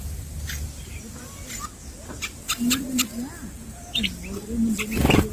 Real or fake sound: real